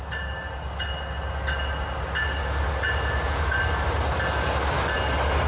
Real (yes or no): yes